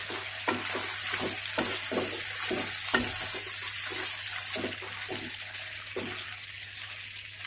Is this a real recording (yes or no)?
yes